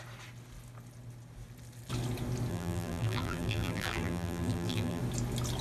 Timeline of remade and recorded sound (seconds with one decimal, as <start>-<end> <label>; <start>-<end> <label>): 0.0-2.5 recorded; 2.5-5.0 remade; 5.0-5.6 recorded